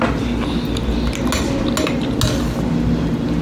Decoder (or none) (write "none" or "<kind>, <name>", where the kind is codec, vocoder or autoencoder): none